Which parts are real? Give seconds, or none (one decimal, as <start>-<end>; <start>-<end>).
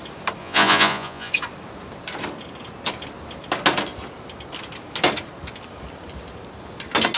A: 0.0-0.4; 1.3-7.2